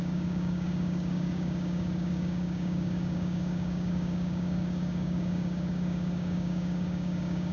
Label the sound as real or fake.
fake